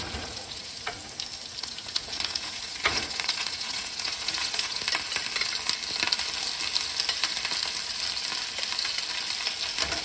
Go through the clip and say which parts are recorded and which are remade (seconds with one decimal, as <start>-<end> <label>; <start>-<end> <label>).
0.0-1.0 remade; 1.0-1.6 recorded; 1.6-4.8 remade; 4.8-10.0 recorded

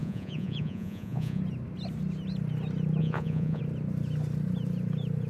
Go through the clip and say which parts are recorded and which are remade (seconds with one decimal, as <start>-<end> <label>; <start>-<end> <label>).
0.0-1.4 remade; 1.4-3.0 recorded; 3.0-3.6 remade; 3.6-5.3 recorded

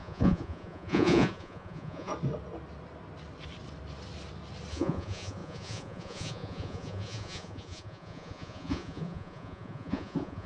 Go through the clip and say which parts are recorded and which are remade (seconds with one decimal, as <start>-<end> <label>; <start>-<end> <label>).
0.0-2.1 remade; 2.1-4.7 recorded; 4.7-10.5 remade

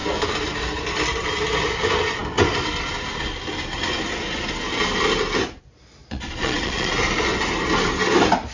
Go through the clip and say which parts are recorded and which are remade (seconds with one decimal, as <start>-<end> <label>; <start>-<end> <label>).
0.0-6.0 recorded; 6.0-6.9 remade; 6.9-8.5 recorded

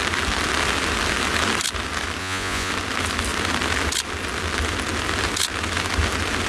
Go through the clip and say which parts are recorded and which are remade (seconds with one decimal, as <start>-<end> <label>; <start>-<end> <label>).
0.0-2.2 recorded; 2.2-2.7 remade; 2.7-6.5 recorded

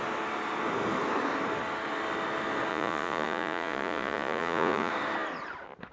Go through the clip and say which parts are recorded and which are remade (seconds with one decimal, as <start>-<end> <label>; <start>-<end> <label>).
0.0-2.7 recorded; 2.7-4.9 remade; 4.9-5.9 recorded

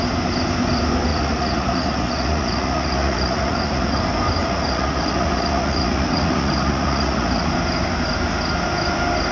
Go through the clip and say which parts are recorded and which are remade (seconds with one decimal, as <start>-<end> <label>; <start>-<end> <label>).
0.0-1.1 recorded; 1.1-4.0 remade; 4.0-4.4 recorded; 4.4-7.5 remade; 7.5-9.3 recorded